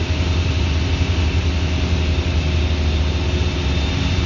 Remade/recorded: recorded